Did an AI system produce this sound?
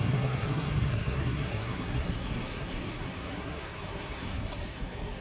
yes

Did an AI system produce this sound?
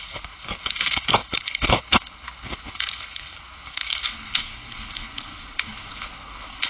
yes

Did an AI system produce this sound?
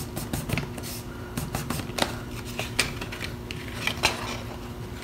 no